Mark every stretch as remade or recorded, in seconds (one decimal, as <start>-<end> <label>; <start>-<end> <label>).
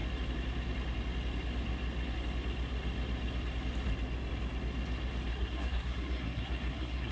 0.0-5.3 recorded; 5.3-7.1 remade